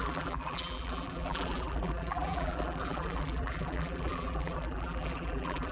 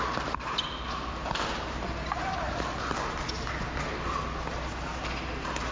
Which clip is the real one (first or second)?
second